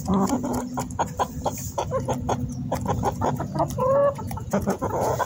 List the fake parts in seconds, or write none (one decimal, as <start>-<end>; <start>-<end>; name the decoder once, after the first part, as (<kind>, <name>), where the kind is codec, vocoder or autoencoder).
4.0-5.2 (vocoder, Vocos)